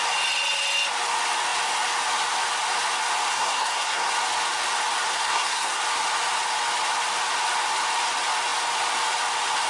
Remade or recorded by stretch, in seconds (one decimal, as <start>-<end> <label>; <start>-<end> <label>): 0.0-3.3 recorded; 3.3-4.1 remade; 4.1-5.1 recorded; 5.1-5.8 remade; 5.8-9.7 recorded